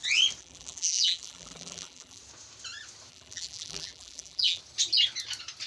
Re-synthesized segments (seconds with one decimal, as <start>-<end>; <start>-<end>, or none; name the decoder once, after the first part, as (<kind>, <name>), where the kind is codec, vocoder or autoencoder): 0.4-2.2 (vocoder, BigVGAN v2); 3.1-4.6